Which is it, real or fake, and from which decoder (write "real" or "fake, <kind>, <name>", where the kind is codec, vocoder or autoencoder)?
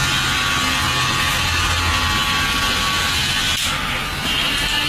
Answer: real